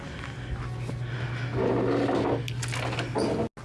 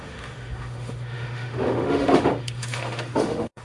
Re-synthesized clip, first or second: second